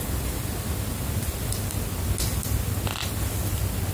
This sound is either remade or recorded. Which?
recorded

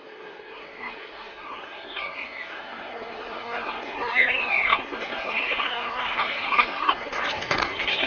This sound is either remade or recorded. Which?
remade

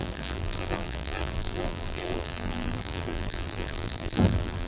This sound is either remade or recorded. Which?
remade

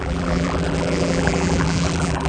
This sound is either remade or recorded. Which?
remade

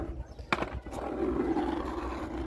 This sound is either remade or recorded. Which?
recorded